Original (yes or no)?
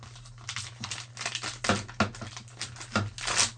yes